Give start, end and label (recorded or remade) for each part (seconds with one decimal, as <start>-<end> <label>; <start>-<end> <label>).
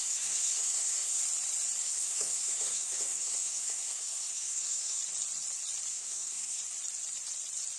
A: 0.0-1.2 remade; 1.2-1.8 recorded; 1.8-5.0 remade; 5.0-5.9 recorded; 5.9-6.6 remade; 6.6-7.8 recorded